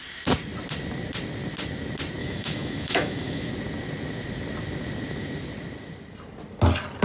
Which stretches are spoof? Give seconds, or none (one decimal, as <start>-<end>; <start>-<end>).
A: 2.2-3.5